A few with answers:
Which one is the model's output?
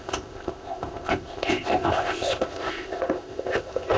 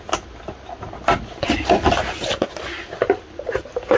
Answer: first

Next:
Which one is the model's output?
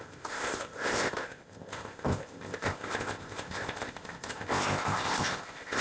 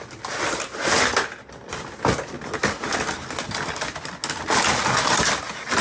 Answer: first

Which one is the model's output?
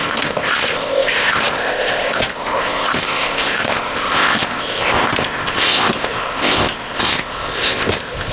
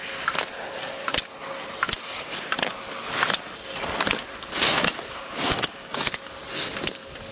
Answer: first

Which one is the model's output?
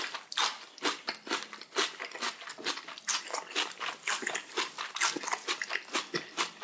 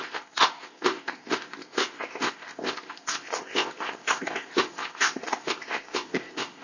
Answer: second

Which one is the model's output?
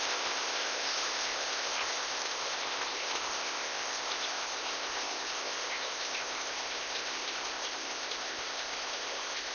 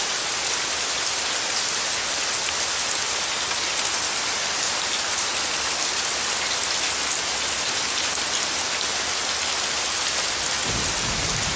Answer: first